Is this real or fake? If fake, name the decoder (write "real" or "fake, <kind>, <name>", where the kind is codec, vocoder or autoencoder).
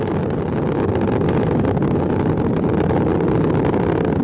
real